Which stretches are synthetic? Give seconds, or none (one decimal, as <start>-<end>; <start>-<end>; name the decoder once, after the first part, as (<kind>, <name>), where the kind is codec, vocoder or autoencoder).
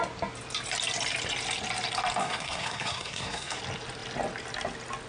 2.2-3.6 (codec, SNAC)